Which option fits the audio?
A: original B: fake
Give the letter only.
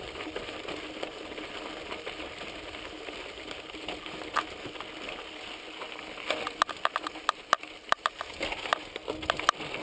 A